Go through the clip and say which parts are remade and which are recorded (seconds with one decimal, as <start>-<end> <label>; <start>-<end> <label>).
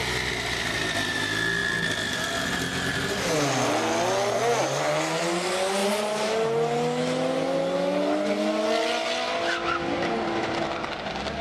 0.0-11.4 recorded